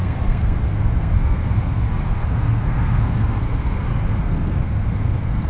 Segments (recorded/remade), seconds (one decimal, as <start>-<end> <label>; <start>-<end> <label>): 0.0-5.5 remade